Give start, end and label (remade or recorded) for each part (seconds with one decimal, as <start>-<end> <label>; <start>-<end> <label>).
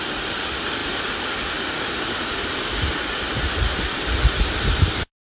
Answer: 0.0-5.4 recorded